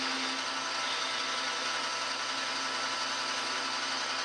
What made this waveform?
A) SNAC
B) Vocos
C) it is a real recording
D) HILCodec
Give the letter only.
C